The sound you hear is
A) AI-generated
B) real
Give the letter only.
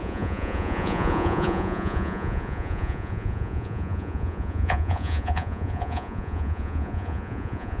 A